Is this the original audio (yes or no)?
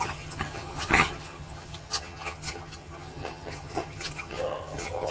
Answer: no